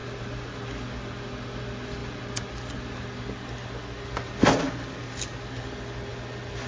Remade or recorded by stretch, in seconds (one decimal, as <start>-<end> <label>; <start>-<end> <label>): 0.0-6.7 recorded